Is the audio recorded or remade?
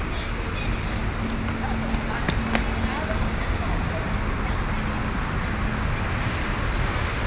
recorded